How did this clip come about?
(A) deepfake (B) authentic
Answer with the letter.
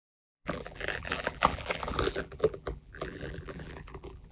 A